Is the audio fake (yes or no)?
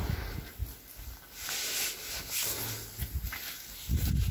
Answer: no